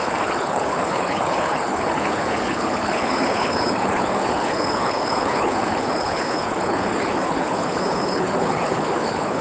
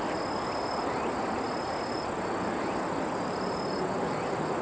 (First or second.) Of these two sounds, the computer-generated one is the first